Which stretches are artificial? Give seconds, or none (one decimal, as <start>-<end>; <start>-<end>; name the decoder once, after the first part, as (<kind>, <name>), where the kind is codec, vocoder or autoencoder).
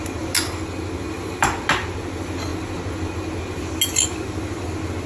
none